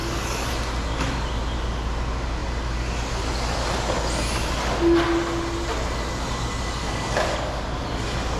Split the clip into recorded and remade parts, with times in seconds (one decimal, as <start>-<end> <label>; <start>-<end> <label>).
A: 0.0-0.5 remade; 0.5-6.8 recorded; 6.8-7.6 remade; 7.6-8.4 recorded